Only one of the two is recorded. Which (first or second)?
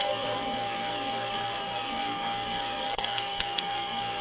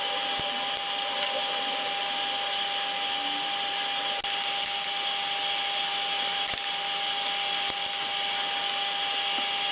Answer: second